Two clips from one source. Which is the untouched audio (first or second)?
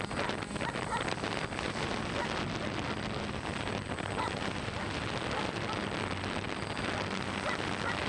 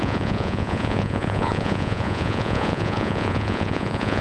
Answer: first